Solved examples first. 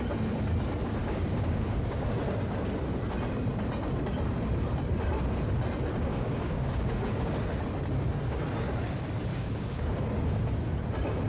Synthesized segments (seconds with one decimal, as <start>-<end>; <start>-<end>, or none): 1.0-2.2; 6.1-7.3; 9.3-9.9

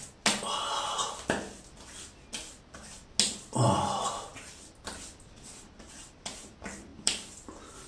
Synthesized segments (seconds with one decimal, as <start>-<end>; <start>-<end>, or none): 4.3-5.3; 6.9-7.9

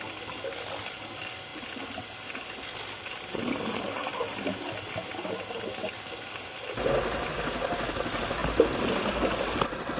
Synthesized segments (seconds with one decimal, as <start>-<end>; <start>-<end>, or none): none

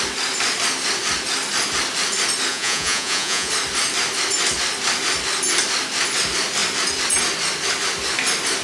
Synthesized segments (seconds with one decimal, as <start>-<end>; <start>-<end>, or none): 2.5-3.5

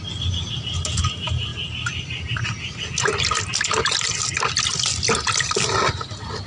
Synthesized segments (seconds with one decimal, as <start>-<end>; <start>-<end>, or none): none